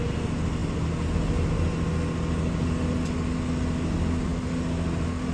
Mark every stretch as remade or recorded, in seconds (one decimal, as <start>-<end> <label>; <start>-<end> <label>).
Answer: 0.0-5.3 recorded